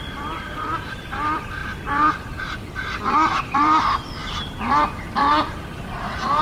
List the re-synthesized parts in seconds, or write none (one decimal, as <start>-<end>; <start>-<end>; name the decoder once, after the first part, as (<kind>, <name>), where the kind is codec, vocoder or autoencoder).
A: 0.0-6.4 (vocoder, BigVGAN v2)